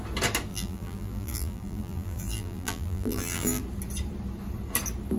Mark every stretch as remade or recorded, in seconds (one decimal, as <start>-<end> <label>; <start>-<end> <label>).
0.0-0.5 recorded; 0.5-3.6 remade; 3.6-5.2 recorded